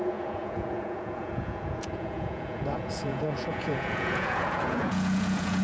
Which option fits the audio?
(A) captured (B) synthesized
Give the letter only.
B